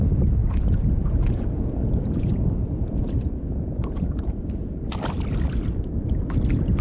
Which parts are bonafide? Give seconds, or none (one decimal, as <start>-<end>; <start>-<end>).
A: 0.0-0.4; 4.4-6.8